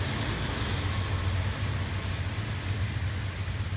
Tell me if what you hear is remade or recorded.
recorded